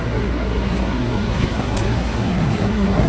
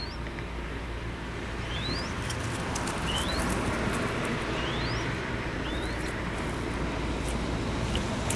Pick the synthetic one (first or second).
first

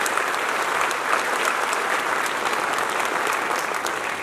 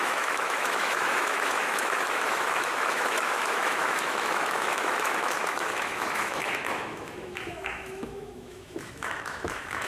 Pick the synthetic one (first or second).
second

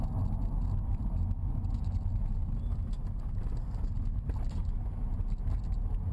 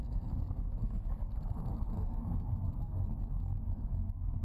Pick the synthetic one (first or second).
second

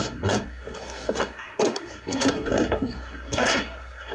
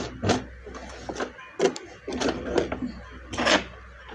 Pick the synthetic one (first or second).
first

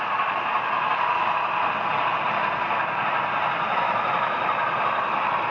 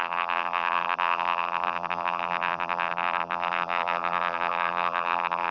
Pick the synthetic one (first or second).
second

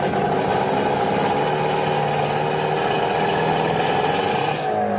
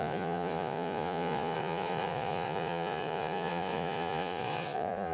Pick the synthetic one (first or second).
second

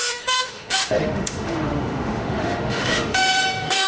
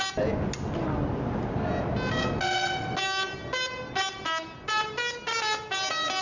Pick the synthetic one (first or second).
first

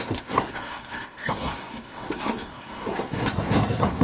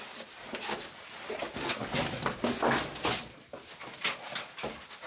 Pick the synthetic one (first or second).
first